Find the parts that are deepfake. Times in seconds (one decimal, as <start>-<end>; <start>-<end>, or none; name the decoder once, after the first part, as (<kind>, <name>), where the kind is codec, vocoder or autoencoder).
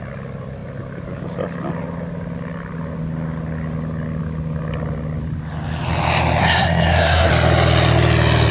6.4-7.3 (codec, SNAC)